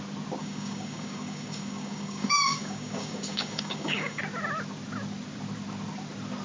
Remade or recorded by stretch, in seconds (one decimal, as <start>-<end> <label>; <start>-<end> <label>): 0.0-0.4 recorded; 0.4-4.2 remade; 4.2-6.4 recorded